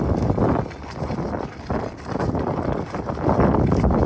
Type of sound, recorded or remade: recorded